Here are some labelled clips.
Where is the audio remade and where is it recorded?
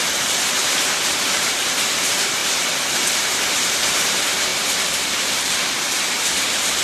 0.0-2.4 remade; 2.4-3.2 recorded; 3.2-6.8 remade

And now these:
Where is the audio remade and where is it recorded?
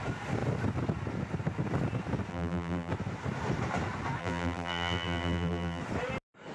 0.0-2.3 recorded; 2.3-2.9 remade; 2.9-4.2 recorded; 4.2-5.8 remade; 5.8-6.5 recorded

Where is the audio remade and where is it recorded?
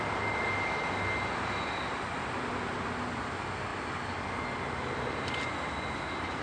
0.0-6.4 recorded